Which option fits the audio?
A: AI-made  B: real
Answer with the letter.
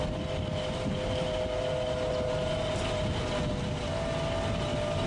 B